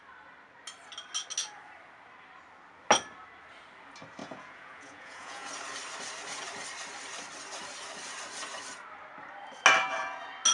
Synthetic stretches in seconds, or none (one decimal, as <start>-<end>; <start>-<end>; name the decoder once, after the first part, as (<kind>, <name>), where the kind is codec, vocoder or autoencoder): 4.2-5.5 (vocoder, Vocos)